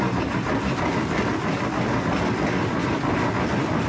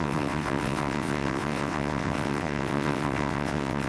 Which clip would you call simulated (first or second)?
second